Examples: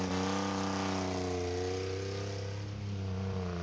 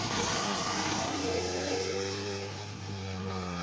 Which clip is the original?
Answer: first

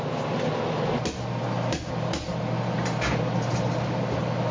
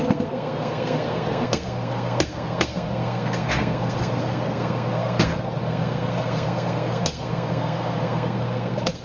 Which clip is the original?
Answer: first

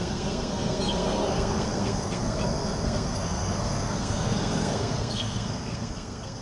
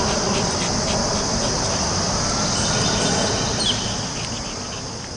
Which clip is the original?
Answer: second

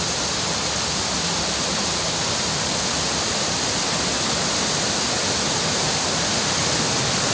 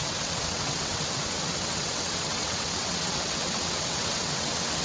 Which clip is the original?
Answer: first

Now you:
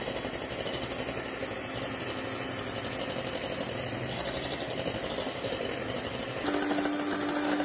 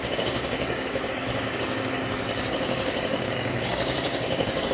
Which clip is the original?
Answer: first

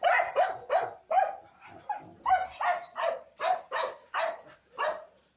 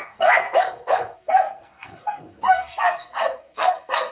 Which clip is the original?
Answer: first